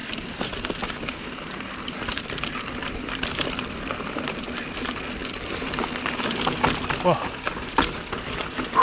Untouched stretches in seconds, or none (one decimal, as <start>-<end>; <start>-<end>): 3.1-8.8